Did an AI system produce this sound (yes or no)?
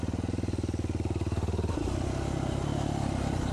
no